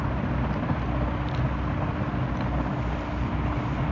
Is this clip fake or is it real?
real